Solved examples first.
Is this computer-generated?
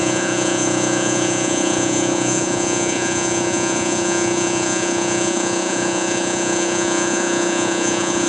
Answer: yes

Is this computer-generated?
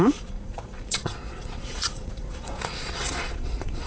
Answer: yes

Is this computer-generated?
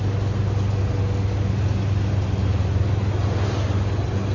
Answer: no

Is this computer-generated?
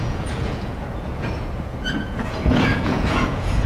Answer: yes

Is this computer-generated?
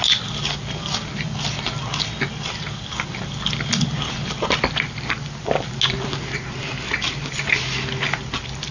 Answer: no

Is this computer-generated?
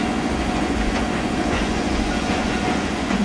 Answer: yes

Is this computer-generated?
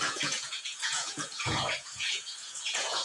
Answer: yes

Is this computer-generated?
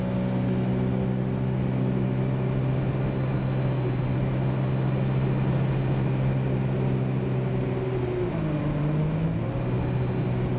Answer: no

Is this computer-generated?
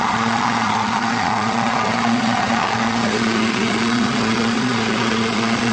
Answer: yes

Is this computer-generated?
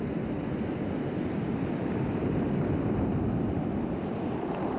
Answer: no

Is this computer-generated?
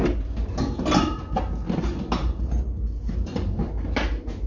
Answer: no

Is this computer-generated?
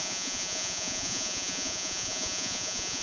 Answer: yes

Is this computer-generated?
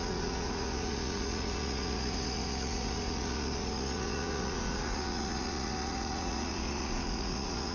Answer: yes